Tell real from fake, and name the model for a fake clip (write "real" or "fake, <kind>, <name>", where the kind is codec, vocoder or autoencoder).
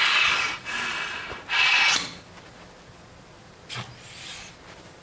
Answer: real